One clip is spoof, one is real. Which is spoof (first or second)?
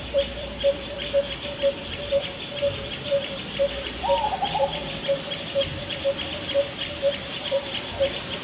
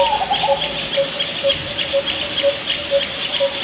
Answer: first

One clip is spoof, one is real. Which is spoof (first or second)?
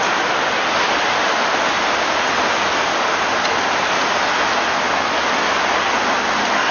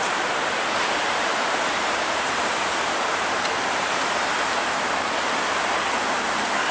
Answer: second